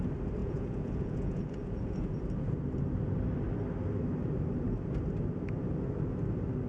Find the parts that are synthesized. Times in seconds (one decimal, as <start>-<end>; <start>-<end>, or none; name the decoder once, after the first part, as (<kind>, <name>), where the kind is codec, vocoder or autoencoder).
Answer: 0.4-2.2 (vocoder, Vocos)